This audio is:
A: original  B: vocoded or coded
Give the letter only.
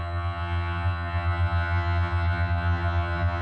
B